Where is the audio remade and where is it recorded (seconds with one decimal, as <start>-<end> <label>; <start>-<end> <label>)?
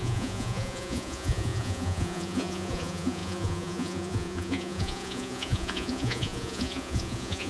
0.0-7.5 remade